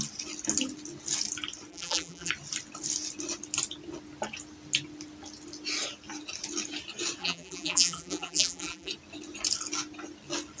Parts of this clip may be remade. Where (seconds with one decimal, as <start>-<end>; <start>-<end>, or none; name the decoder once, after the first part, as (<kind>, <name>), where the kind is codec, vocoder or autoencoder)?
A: 1.7-2.3 (vocoder, BigVGAN v2); 7.2-8.9